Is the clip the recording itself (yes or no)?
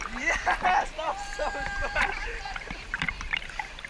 no